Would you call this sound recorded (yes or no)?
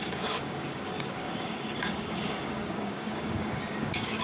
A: no